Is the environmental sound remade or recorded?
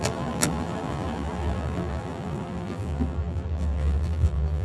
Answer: remade